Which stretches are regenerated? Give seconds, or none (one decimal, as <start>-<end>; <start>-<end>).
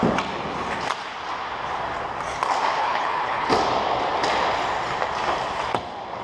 2.8-3.5